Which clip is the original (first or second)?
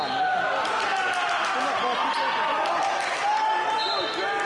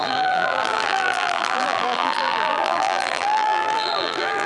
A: first